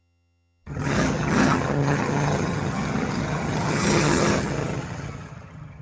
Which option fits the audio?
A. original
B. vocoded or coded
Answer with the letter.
B